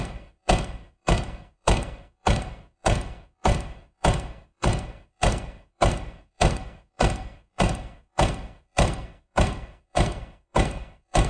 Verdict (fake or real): fake